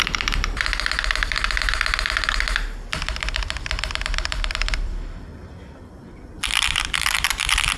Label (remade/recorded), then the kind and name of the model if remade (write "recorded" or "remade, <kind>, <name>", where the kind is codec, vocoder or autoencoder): remade, vocoder, BigVGAN v2